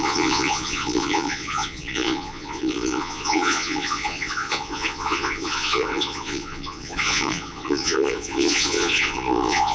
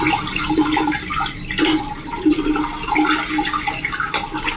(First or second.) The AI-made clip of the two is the first